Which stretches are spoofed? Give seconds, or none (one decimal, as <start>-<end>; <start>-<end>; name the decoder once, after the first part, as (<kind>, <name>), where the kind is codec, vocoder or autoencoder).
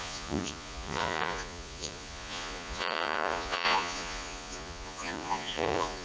0.0-6.0 (vocoder, Vocos)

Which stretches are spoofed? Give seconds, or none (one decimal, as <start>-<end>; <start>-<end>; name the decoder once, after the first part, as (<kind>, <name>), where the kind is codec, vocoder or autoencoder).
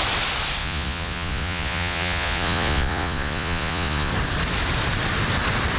0.6-4.1 (vocoder, Vocos)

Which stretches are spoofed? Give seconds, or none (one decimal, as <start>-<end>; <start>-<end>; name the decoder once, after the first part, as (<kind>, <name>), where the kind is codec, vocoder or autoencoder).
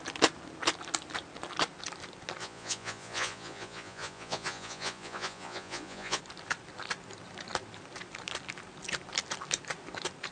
2.4-6.2 (vocoder, Vocos)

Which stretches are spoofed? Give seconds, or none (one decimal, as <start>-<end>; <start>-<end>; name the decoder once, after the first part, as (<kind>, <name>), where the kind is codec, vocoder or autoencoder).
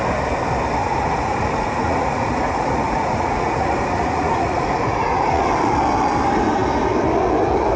0.8-5.5 (vocoder, Vocos)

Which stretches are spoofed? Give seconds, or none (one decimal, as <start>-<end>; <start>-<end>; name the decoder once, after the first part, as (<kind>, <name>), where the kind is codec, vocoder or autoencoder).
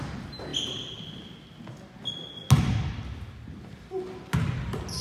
none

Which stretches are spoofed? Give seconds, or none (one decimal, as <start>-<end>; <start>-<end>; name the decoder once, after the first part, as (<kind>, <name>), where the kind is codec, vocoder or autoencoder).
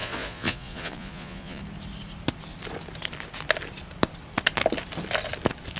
0.0-1.6 (vocoder, Vocos)